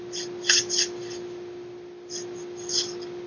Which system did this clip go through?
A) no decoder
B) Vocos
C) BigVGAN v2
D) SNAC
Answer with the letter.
A